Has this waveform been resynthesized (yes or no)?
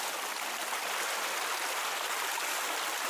no